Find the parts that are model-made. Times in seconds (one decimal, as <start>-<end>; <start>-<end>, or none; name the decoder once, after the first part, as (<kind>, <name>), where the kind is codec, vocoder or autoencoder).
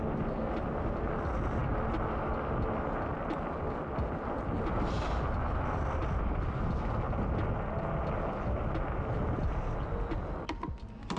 none